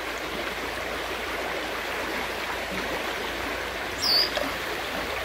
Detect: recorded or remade recorded